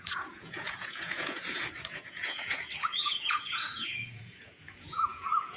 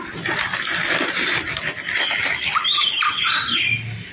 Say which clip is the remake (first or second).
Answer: first